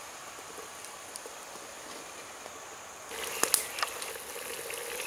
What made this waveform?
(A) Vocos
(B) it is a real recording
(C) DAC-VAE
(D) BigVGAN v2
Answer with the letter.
B